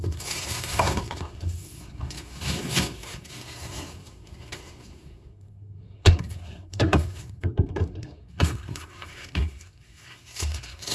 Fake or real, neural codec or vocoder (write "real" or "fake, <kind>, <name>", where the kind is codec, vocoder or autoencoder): fake, codec, SNAC